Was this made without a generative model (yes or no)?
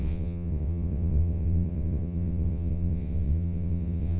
no